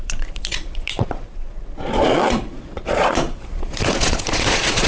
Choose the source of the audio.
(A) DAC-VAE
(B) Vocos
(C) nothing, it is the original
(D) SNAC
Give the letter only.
B